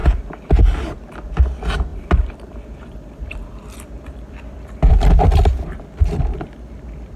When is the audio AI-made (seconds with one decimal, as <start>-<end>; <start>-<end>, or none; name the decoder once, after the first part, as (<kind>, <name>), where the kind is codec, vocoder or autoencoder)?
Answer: 0.0-0.6 (vocoder, BigVGAN v2); 1.9-6.0